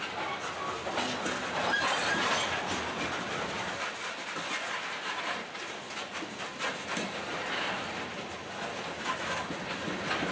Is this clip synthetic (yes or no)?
no